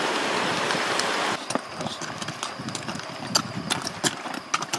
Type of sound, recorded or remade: recorded